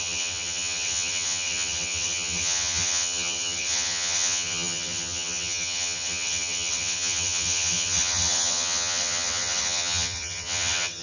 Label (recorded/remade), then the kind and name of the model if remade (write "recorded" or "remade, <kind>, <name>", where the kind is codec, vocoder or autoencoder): remade, vocoder, HiFi-GAN